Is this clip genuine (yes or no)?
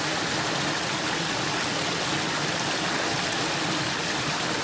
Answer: yes